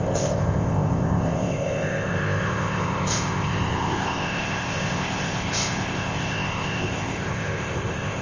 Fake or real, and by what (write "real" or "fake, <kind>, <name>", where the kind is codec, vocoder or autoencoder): fake, codec, ZipCodec